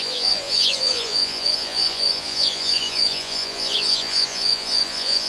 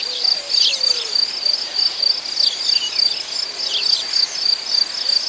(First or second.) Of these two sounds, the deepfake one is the first